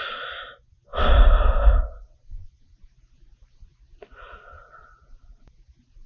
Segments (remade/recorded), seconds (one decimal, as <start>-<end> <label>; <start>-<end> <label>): 0.0-6.1 recorded